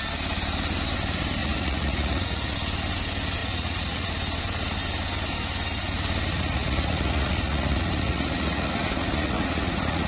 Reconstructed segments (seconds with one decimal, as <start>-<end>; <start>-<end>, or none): 1.4-2.5; 3.4-4.1; 6.3-10.1